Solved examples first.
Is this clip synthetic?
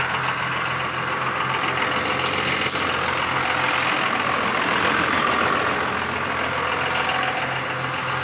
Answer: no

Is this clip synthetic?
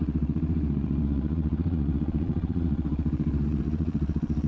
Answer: yes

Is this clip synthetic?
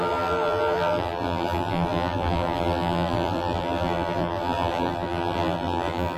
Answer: yes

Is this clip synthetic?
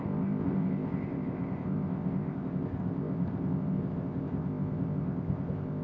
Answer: yes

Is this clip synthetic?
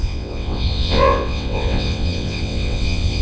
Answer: yes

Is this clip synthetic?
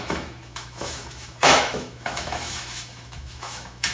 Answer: yes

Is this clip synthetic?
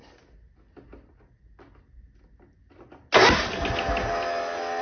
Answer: no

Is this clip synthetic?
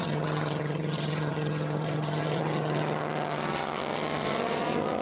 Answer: yes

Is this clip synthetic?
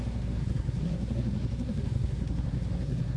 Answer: yes